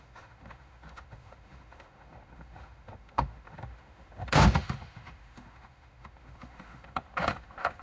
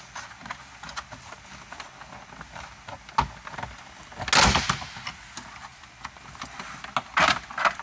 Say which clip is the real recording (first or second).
second